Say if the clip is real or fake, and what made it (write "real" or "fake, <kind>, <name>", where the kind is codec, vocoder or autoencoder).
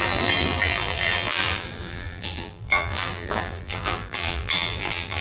fake, vocoder, BigVGAN v2